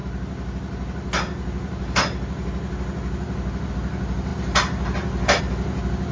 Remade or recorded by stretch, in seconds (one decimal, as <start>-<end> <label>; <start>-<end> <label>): 0.0-6.1 recorded